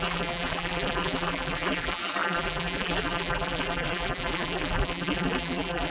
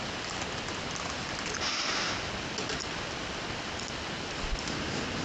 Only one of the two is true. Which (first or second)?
second